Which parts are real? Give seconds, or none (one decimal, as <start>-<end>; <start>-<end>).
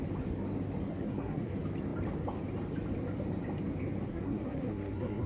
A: 0.0-0.9; 1.5-4.1